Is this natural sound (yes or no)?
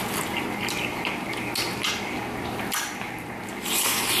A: yes